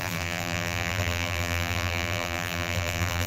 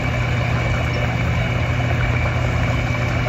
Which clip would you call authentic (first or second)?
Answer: second